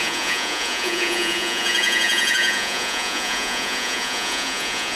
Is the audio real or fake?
fake